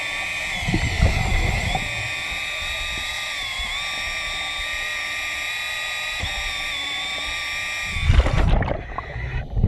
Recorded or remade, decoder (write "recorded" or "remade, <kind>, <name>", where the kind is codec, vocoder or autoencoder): recorded